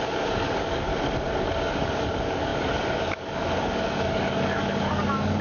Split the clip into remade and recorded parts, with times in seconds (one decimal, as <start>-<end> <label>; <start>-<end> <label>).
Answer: 0.0-0.9 remade; 0.9-1.4 recorded; 1.4-5.4 remade